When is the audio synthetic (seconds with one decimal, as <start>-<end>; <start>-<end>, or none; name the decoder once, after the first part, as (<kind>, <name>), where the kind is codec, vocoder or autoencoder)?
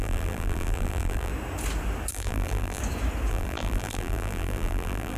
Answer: 0.0-1.3 (vocoder, BigVGAN v2); 2.1-2.8; 3.3-5.2